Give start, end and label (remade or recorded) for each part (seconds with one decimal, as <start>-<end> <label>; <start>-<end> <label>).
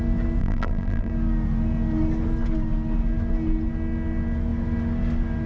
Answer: 0.0-0.4 recorded; 0.4-1.1 remade; 1.1-5.5 recorded